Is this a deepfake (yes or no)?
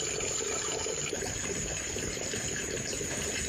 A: yes